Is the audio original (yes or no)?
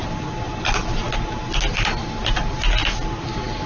yes